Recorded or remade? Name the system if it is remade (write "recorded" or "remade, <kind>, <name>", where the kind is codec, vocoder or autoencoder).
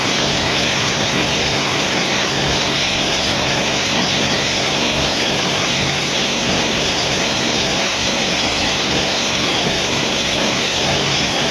remade, codec, SNAC